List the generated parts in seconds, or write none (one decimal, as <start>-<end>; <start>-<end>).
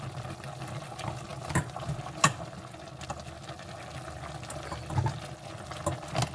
none